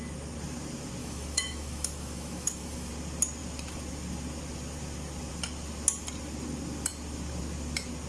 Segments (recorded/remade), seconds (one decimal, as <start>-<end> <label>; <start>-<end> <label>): 0.0-1.0 recorded; 1.0-2.9 remade; 2.9-8.1 recorded